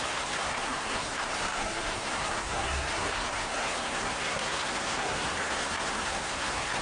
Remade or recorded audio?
remade